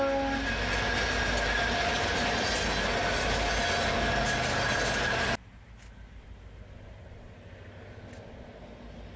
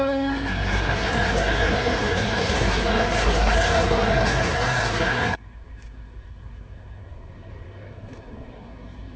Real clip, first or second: first